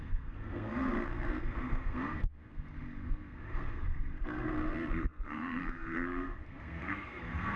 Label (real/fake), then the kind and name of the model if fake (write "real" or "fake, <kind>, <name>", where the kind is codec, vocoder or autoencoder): fake, codec, SNAC